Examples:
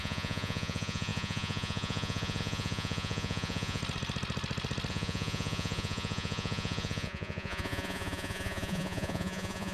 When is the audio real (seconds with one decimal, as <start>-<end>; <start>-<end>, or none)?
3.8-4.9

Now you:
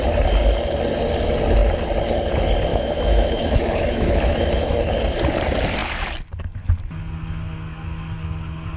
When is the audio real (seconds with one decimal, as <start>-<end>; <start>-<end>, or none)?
0.0-2.7; 4.9-8.8

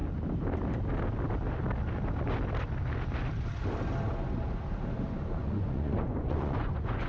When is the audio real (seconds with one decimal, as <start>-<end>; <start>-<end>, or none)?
0.0-5.4

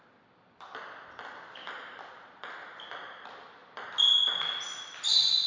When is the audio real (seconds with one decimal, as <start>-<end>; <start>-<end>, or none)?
0.0-5.5